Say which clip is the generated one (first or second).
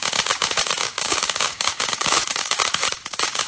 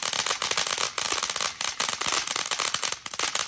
first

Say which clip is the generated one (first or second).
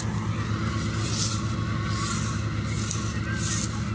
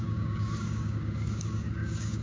second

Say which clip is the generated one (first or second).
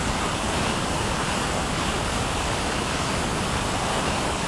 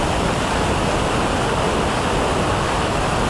first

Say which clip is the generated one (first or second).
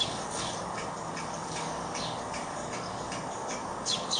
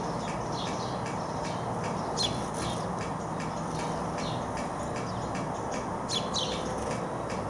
first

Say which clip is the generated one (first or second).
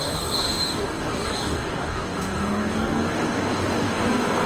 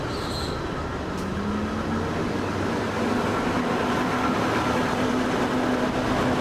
first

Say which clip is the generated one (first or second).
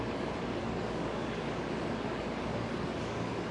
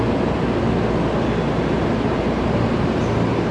first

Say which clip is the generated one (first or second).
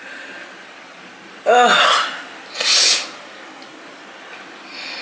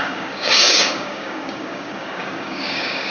second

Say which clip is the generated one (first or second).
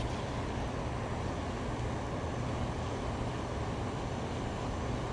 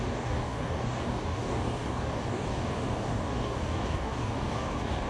second